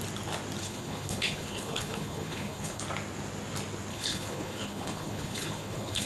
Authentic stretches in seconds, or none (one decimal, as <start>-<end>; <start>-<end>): 0.0-0.6; 2.8-3.9